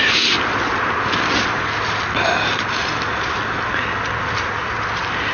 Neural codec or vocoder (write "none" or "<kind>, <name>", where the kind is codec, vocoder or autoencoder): none